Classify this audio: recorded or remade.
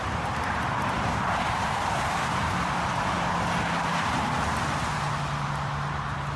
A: recorded